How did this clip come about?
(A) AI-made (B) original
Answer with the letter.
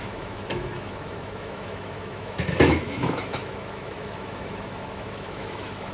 A